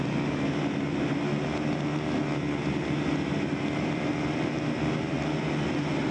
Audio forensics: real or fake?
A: real